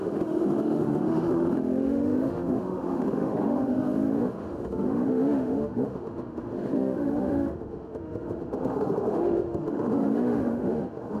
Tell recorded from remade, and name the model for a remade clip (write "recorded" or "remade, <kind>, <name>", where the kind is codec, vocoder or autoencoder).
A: remade, autoencoder, DAC-VAE